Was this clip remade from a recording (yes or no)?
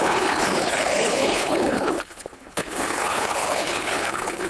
yes